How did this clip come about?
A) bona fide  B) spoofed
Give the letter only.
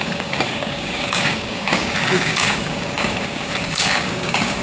B